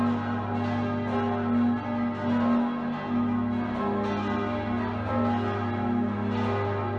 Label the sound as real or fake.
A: real